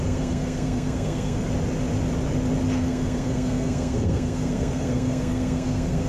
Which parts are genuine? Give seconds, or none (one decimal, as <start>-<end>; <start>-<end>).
1.5-2.7